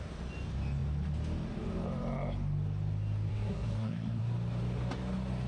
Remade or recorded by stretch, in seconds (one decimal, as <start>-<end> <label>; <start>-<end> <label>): 0.0-3.3 recorded; 3.3-4.2 remade; 4.2-5.5 recorded